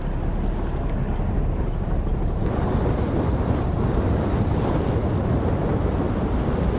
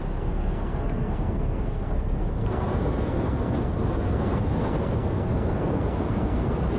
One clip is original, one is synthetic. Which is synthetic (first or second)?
second